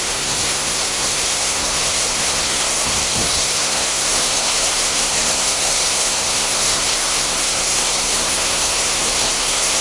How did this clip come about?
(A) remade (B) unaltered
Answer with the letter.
A